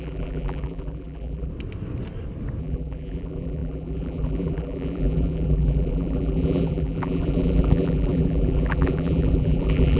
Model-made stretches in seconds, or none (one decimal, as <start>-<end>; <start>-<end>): 0.0-1.5; 2.6-10.0